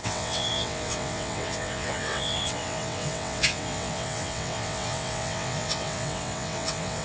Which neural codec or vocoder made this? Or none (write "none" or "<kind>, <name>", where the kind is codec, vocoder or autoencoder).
vocoder, WaveNeXt